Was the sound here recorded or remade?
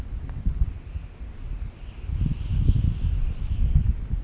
recorded